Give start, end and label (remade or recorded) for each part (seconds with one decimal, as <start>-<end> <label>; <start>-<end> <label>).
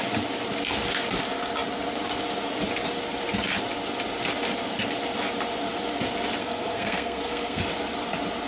0.0-6.4 recorded; 6.4-7.6 remade; 7.6-8.5 recorded